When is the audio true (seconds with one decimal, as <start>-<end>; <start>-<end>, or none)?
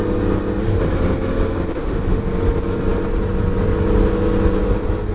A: 0.0-1.7; 2.2-5.1